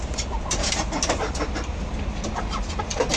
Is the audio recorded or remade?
remade